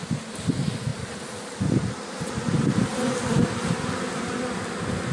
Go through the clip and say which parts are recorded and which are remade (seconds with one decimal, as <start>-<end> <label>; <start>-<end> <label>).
0.0-5.1 recorded